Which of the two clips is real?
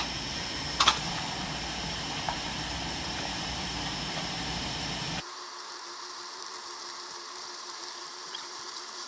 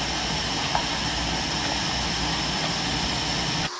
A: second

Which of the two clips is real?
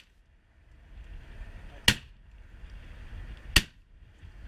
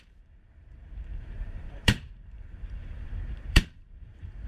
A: first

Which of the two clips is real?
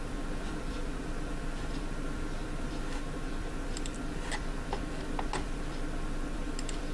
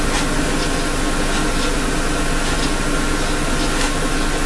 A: second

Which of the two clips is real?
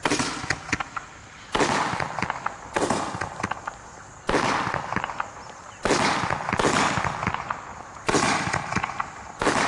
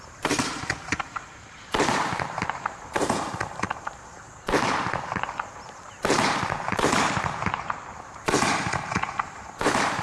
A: first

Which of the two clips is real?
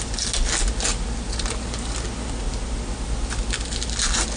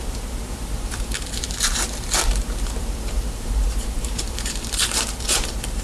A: first